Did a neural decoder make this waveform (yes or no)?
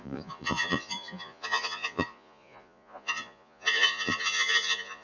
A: yes